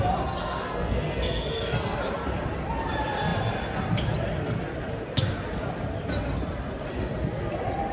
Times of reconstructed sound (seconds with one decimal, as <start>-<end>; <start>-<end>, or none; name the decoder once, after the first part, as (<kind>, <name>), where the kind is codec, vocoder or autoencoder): 0.4-2.0 (codec, SNAC)